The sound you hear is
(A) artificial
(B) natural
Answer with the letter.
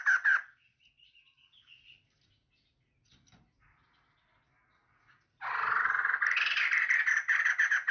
B